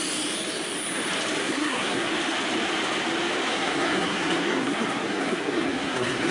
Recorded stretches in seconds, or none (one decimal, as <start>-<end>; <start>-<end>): 0.0-1.4; 2.1-3.5